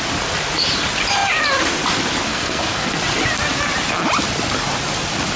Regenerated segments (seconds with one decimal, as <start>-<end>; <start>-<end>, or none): 2.3-2.9